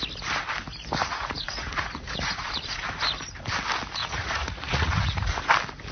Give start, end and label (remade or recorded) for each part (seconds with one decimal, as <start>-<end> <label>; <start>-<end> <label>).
0.0-1.0 recorded; 1.0-2.8 remade; 2.8-4.0 recorded; 4.0-5.4 remade; 5.4-5.9 recorded